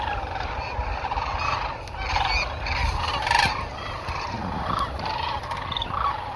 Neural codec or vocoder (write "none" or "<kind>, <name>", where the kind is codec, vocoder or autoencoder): none